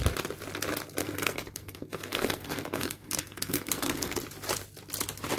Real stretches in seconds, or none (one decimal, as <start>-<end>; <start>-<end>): 0.0-1.0; 4.2-5.4